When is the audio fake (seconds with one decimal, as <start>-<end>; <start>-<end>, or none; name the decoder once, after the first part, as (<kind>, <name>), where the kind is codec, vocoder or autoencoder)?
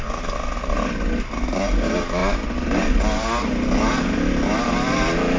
none